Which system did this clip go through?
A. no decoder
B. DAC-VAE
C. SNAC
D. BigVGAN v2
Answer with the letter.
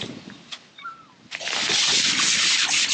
D